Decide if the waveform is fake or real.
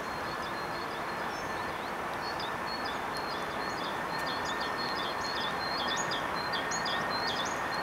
fake